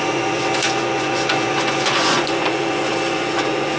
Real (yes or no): no